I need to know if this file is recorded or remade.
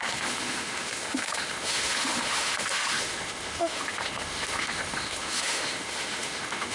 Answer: remade